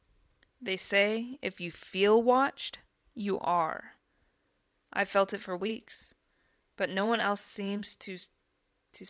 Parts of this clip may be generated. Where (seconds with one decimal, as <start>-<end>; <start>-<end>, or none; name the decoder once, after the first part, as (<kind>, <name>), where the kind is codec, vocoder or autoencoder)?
5.7-8.4 (vocoder, WaveNeXt)